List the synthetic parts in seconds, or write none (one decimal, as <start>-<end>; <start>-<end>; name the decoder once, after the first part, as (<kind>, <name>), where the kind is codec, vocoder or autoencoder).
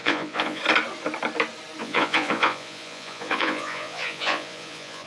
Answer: 0.0-0.6 (vocoder, Vocos); 1.8-5.1